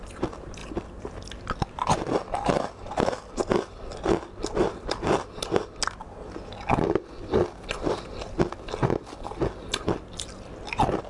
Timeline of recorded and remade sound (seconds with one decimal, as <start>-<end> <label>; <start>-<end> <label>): 0.0-11.1 recorded